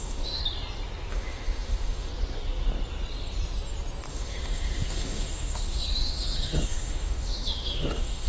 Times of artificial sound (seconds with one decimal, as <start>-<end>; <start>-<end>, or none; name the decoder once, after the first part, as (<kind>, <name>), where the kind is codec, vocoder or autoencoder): 0.0-0.4 (autoencoder, DAC-VAE); 1.1-2.1; 4.1-8.3